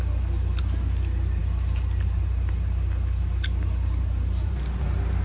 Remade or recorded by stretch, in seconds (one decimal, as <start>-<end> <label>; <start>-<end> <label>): 0.0-5.2 recorded